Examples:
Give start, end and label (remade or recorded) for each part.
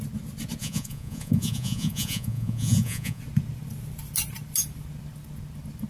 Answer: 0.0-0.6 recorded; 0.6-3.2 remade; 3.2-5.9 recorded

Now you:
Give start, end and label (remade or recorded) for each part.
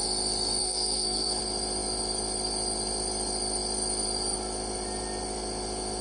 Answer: 0.0-0.6 recorded; 0.6-1.4 remade; 1.4-6.0 recorded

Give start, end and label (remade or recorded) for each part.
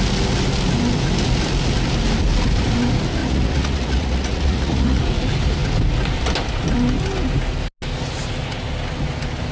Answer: 0.0-3.2 recorded; 3.2-5.0 remade; 5.0-9.5 recorded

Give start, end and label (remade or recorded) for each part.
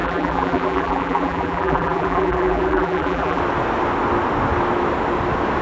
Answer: 0.0-3.4 remade; 3.4-5.6 recorded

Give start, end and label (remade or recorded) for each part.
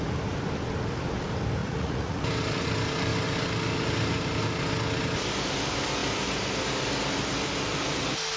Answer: 0.0-1.6 recorded; 1.6-2.2 remade; 2.2-8.4 recorded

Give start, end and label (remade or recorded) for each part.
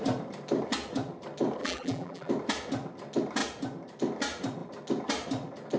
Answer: 0.0-1.6 recorded; 1.6-2.3 remade; 2.3-5.8 recorded